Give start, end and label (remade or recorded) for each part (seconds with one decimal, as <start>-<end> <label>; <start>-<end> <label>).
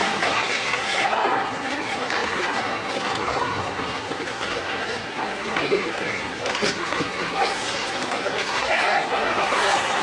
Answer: 0.0-10.0 remade